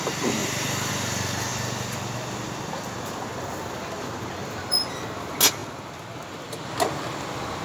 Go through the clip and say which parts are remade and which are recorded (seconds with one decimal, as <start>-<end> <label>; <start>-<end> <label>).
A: 0.0-0.4 recorded; 0.4-0.9 remade; 0.9-7.6 recorded